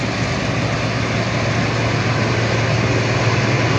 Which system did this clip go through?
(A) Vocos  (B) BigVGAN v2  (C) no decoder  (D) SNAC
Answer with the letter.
C